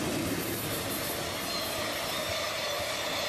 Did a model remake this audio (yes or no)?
no